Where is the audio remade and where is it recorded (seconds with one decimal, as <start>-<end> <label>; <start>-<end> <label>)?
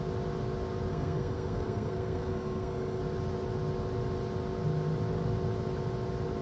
0.0-0.9 recorded; 0.9-3.0 remade; 3.0-6.4 recorded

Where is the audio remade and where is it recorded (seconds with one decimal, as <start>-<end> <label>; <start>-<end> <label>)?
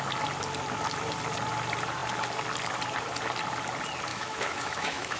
0.0-4.1 recorded; 4.1-5.2 remade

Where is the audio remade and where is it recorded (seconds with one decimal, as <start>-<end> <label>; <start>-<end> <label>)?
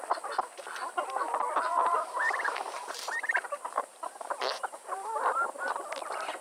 0.0-1.8 recorded; 1.8-5.6 remade; 5.6-6.4 recorded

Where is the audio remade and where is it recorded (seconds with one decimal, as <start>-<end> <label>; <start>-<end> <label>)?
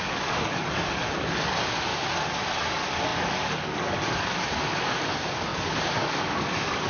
0.0-1.9 remade; 1.9-2.7 recorded; 2.7-6.9 remade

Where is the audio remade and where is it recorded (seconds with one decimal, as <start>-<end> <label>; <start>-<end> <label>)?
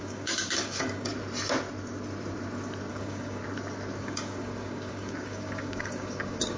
0.0-1.1 remade; 1.1-2.9 recorded; 2.9-3.4 remade; 3.4-4.0 recorded; 4.0-6.6 remade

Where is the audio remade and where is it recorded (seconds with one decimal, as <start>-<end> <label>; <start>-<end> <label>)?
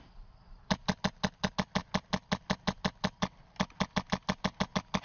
0.0-5.0 recorded